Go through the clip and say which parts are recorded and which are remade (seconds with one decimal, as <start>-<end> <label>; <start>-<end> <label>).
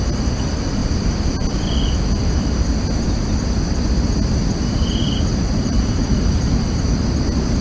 0.0-5.3 recorded; 5.3-6.6 remade; 6.6-7.6 recorded